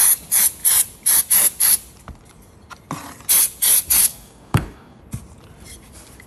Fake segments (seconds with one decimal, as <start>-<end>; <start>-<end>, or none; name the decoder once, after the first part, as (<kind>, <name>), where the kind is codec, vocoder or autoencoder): 4.0-5.0 (codec, DAC)